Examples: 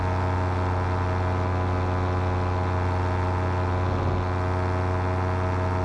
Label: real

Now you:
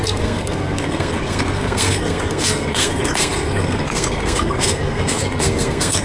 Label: fake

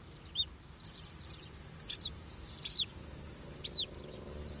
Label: fake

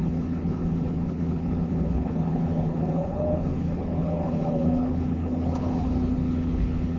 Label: fake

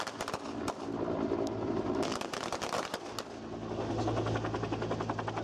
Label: real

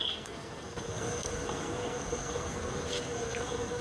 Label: fake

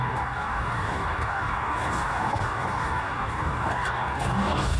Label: fake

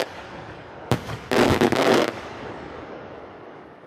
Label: fake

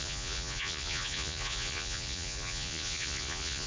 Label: fake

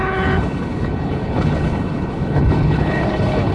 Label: fake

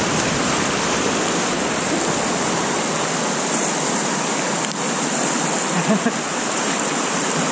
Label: fake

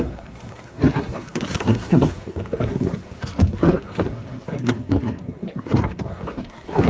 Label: fake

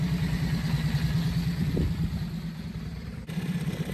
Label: real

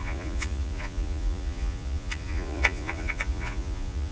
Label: fake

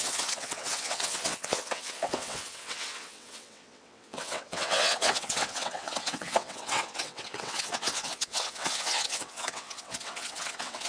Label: fake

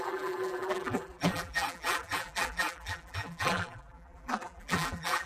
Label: fake